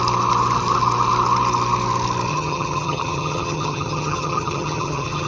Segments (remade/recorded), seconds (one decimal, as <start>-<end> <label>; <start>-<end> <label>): 0.0-2.3 recorded; 2.3-5.3 remade